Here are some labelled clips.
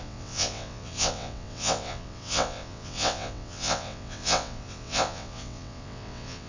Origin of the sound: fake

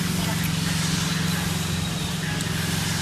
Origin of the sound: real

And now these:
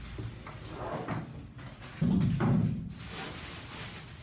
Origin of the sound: real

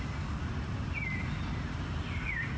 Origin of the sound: real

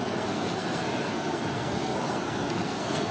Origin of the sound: fake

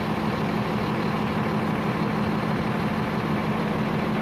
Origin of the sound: real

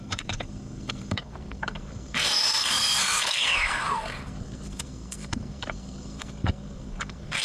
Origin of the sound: fake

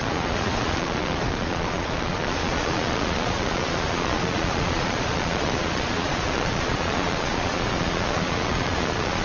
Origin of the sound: fake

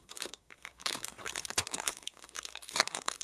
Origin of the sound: fake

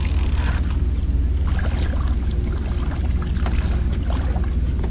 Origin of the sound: real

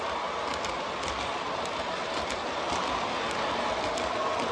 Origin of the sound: real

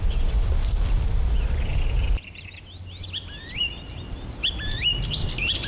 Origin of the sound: fake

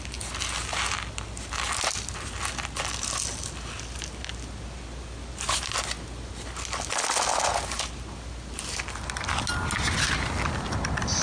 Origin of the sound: real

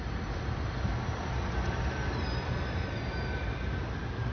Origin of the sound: real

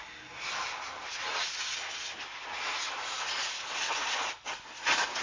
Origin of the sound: real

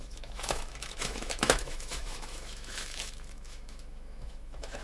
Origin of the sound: fake